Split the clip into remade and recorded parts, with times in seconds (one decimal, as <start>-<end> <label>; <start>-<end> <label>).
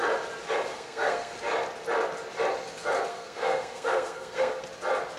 0.0-0.7 recorded; 0.7-1.3 remade; 1.3-3.1 recorded; 3.1-4.6 remade; 4.6-5.2 recorded